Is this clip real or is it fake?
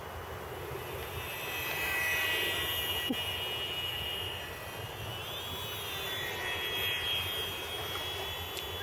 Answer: real